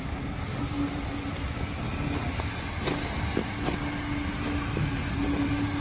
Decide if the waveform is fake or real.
real